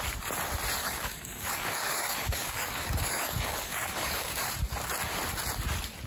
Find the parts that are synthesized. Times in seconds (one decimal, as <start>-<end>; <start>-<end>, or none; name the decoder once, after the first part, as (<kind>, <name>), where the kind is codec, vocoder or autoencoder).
0.8-4.5 (codec, DAC)